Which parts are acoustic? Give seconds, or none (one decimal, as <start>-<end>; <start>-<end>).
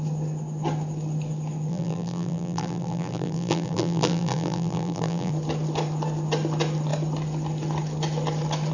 0.0-1.7; 5.3-8.7